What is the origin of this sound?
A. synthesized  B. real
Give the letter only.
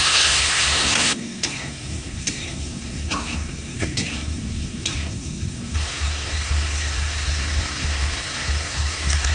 A